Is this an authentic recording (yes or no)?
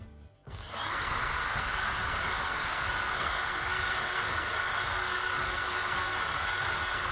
no